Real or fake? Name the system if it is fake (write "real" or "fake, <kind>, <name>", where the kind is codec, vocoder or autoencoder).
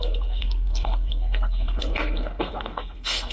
fake, codec, SNAC